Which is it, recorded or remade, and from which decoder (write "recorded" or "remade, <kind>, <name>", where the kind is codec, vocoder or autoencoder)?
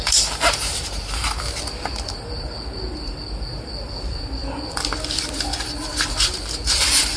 remade, vocoder, BigVGAN v2